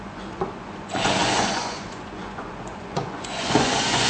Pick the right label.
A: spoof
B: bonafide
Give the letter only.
A